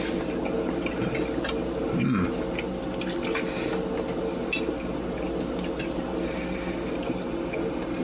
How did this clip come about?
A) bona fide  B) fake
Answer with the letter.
A